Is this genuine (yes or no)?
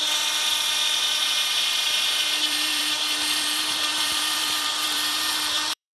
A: no